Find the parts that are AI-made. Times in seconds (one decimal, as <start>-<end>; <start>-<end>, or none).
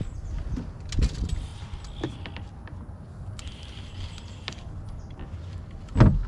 none